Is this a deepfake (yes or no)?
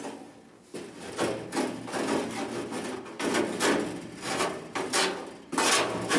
no